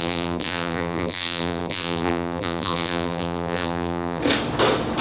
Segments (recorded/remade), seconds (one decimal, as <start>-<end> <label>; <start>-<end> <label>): 0.0-4.2 remade; 4.2-5.0 recorded